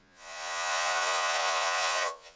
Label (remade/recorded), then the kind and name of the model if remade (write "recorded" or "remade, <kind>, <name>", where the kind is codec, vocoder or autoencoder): remade, vocoder, Vocos